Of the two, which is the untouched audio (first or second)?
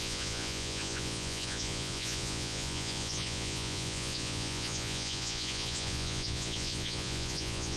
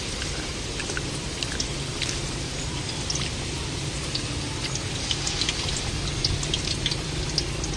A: second